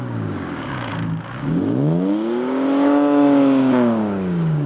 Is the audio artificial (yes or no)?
yes